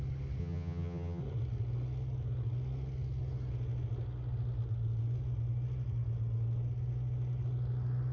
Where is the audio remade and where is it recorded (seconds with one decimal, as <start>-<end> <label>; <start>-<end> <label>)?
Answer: 0.0-0.4 recorded; 0.4-1.2 remade; 1.2-8.1 recorded